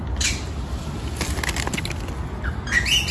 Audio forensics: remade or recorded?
recorded